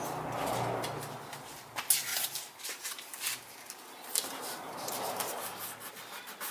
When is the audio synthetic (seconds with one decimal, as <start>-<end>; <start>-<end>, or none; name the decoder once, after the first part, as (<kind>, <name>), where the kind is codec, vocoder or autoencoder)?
2.1-5.4 (vocoder, BigVGAN v2)